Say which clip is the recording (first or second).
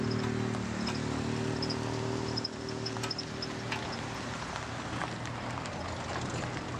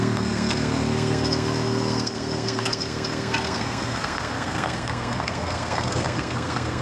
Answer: first